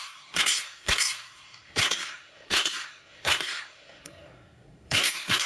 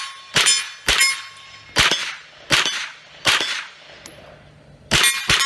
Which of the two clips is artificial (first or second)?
first